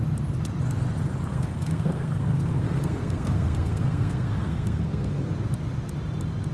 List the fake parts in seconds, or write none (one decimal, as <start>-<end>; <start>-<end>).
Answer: 1.3-5.2